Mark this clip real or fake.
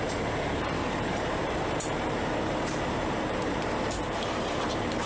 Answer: fake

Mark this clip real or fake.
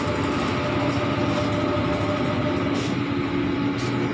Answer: real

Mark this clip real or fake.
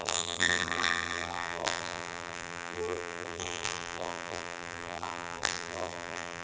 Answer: fake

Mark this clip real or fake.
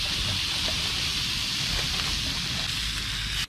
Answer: real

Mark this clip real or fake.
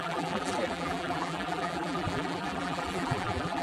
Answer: fake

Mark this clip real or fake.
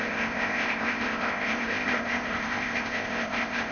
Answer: fake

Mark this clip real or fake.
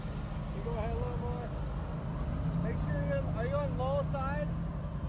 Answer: real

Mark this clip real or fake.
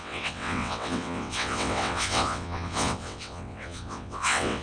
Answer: fake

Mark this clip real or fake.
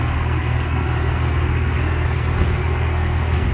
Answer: fake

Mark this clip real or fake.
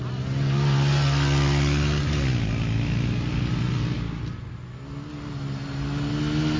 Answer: real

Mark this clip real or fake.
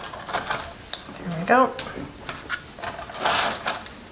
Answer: real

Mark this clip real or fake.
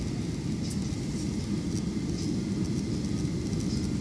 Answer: real